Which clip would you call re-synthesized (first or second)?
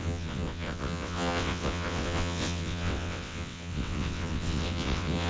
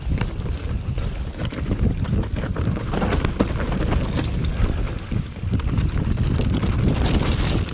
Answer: first